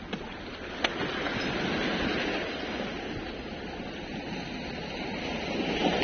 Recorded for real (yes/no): yes